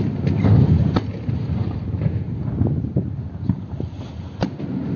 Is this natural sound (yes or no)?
yes